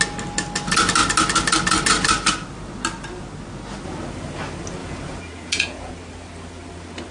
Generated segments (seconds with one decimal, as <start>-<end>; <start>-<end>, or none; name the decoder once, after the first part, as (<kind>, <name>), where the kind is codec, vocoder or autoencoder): 4.8-5.9 (vocoder, Vocos)

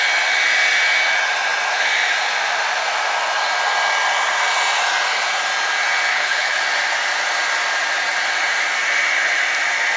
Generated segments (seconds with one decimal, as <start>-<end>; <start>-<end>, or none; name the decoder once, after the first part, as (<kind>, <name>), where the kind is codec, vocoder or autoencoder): 6.1-6.6 (codec, HILCodec)

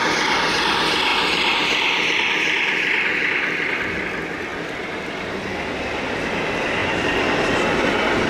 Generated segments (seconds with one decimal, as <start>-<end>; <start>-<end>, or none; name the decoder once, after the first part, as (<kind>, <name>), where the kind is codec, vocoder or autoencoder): 1.1-4.0 (vocoder, BigVGAN v2); 4.5-5.2; 6.8-7.6